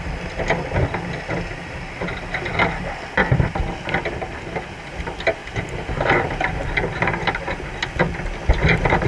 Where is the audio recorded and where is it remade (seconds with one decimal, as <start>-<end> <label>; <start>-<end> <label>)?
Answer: 0.0-5.4 recorded; 5.4-7.4 remade; 7.4-9.1 recorded